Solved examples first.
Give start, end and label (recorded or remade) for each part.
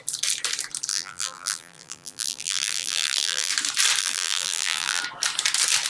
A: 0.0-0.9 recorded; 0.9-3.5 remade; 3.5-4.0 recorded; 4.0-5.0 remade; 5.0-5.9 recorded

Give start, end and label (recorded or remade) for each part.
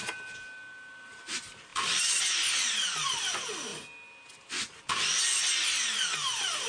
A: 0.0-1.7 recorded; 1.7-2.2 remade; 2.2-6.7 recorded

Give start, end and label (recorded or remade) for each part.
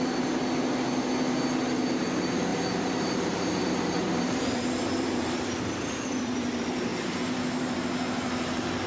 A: 0.0-2.5 recorded; 2.5-5.3 remade; 5.3-8.9 recorded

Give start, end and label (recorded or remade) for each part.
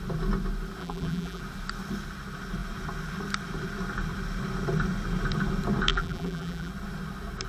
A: 0.0-0.8 recorded; 0.8-1.4 remade; 1.4-5.9 recorded; 5.9-6.7 remade; 6.7-7.5 recorded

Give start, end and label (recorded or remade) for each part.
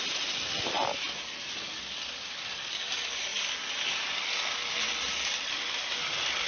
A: 0.0-3.3 recorded; 3.3-5.5 remade; 5.5-6.5 recorded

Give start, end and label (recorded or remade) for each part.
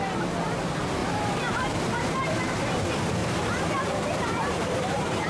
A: 0.0-1.0 recorded; 1.0-2.2 remade; 2.2-3.2 recorded; 3.2-5.3 remade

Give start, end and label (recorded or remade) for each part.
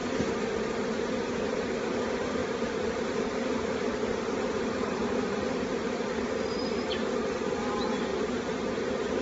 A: 0.0-2.4 recorded; 2.4-7.6 remade; 7.6-8.1 recorded; 8.1-9.2 remade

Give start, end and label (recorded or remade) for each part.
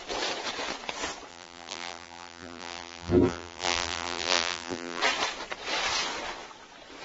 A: 0.0-1.3 recorded; 1.3-5.0 remade; 5.0-7.0 recorded